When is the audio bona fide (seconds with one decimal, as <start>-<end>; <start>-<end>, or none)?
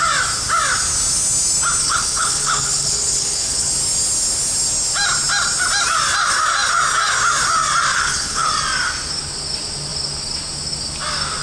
0.0-1.8; 3.7-7.9; 8.5-11.4